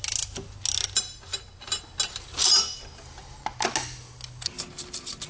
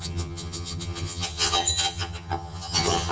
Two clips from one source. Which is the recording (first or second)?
first